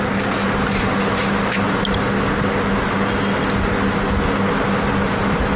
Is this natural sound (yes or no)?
yes